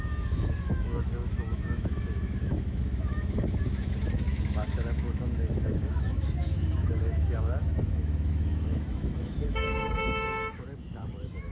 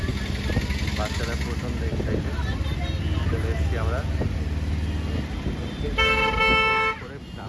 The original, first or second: second